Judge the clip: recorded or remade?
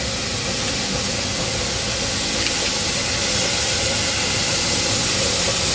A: recorded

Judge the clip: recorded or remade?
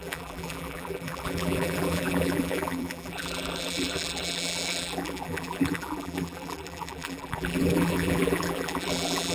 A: remade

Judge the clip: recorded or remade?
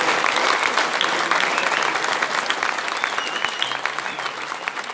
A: recorded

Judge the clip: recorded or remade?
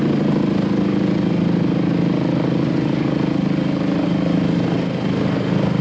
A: recorded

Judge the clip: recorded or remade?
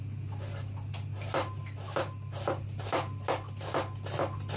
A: recorded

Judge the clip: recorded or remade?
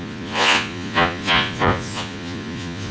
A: remade